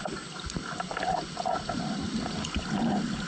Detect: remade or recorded recorded